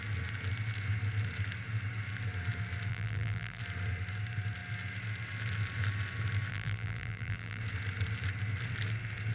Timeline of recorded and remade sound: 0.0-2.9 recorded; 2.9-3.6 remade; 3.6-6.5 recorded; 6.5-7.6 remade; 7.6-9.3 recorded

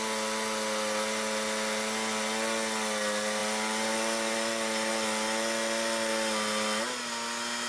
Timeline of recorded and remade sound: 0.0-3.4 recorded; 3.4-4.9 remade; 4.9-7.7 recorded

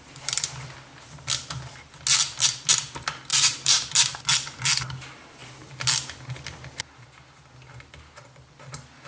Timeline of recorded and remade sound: 0.0-3.3 recorded; 3.3-3.9 remade; 3.9-9.1 recorded

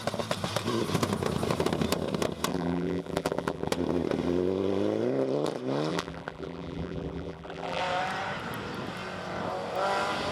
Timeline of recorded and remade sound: 0.0-2.5 recorded; 2.5-3.7 remade; 3.7-5.9 recorded; 5.9-7.8 remade; 7.8-10.3 recorded

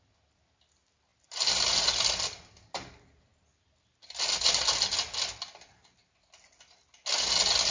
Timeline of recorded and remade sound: 0.0-7.7 recorded

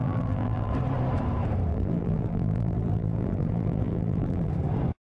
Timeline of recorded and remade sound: 0.0-0.7 remade; 0.7-1.7 recorded; 1.7-4.5 remade; 4.5-5.1 recorded

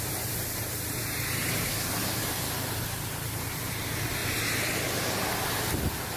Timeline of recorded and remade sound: 0.0-6.2 remade